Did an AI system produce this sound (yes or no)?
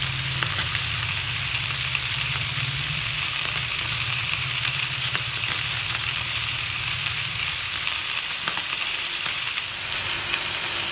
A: yes